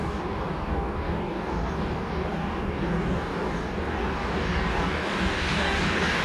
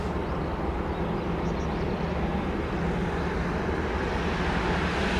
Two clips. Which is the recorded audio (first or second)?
second